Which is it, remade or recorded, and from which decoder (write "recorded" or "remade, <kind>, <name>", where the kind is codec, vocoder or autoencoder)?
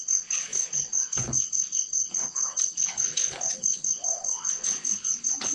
remade, codec, HILCodec